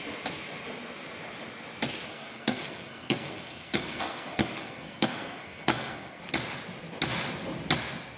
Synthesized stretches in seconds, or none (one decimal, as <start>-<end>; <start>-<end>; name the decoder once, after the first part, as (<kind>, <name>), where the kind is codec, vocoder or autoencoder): 2.1-6.2 (codec, SNAC)

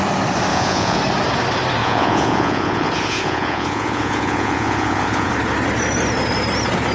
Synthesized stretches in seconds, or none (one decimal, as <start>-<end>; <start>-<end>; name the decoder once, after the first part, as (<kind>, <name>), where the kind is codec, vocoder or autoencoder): 0.5-1.0 (vocoder, Vocos); 1.8-5.3